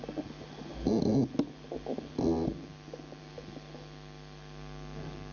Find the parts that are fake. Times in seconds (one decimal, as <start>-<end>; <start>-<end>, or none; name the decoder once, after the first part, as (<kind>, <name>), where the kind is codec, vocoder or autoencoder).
none